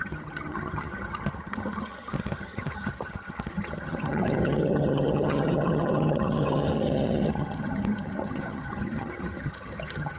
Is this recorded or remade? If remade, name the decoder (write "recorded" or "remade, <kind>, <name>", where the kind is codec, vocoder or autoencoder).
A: remade, vocoder, HiFi-GAN